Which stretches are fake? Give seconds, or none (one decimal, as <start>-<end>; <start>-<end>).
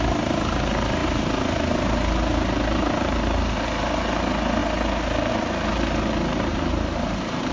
6.5-7.5